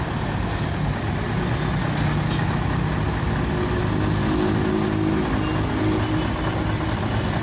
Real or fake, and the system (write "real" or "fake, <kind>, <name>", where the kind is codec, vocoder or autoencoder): real